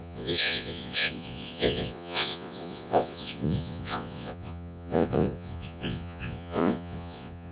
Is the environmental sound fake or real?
fake